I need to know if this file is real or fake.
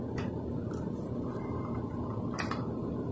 real